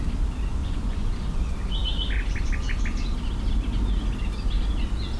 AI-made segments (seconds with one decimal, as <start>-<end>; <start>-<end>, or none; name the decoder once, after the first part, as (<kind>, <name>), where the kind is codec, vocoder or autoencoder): 0.6-1.2 (vocoder, Vocos)